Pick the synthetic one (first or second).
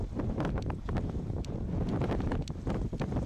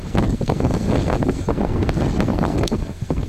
second